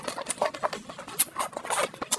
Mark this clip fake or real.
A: real